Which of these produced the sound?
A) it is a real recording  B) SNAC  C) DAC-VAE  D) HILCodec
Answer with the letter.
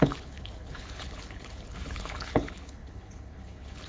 D